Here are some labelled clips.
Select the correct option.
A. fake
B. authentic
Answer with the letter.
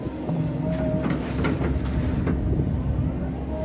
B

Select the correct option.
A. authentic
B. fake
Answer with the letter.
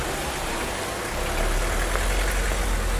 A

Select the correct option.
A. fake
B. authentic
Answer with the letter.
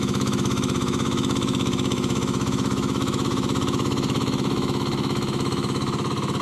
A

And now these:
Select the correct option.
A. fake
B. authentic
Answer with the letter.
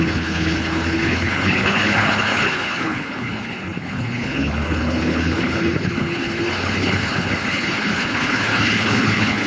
A